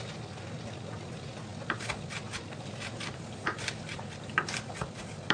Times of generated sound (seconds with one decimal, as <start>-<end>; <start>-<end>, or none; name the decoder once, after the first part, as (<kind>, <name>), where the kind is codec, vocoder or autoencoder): none